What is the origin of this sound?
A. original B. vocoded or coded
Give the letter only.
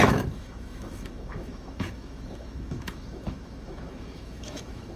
B